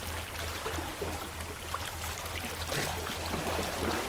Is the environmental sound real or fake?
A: real